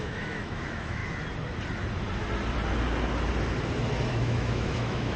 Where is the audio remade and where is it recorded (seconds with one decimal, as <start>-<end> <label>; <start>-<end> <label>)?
0.0-1.0 remade; 1.0-4.1 recorded; 4.1-5.2 remade

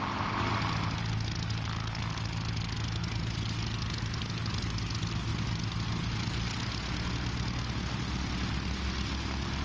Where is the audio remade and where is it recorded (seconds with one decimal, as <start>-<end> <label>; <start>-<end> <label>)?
0.0-9.6 recorded

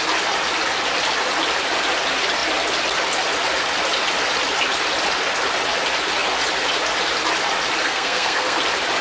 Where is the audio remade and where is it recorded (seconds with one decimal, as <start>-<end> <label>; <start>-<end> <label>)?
0.0-7.8 recorded; 7.8-8.6 remade; 8.6-9.0 recorded

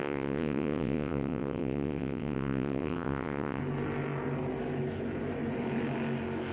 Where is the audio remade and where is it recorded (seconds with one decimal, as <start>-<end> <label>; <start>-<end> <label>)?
0.0-3.6 remade; 3.6-6.5 recorded

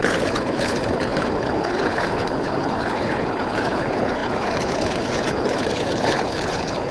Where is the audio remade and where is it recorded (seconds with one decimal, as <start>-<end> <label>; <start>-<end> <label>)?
0.0-6.9 remade

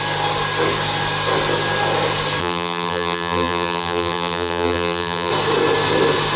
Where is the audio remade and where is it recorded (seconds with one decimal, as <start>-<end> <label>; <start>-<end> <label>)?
0.0-2.4 recorded; 2.4-5.3 remade; 5.3-6.4 recorded

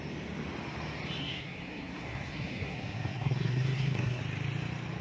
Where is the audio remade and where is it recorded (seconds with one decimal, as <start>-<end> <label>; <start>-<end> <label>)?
0.0-1.2 recorded; 1.2-4.2 remade; 4.2-5.0 recorded

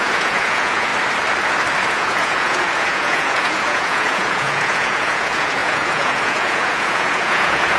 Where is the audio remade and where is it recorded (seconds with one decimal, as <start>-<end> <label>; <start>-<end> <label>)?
0.0-0.9 remade; 0.9-1.9 recorded; 1.9-7.8 remade